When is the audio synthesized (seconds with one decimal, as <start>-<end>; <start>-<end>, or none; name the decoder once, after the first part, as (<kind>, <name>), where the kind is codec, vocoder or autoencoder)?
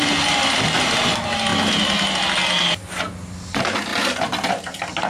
none